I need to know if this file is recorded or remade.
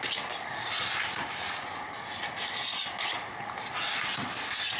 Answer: recorded